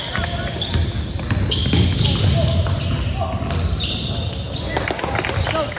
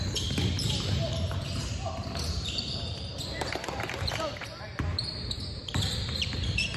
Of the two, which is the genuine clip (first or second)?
first